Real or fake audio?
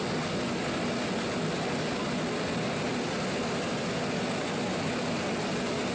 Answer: real